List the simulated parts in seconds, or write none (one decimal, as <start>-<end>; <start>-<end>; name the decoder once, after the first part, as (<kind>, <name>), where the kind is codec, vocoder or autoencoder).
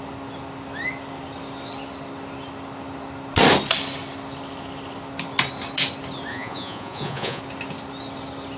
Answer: 6.3-7.4 (vocoder, Vocos)